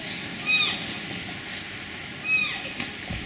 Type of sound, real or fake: real